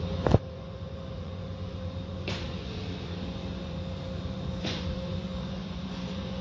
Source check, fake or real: fake